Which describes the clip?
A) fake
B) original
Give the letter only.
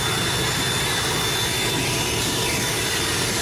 B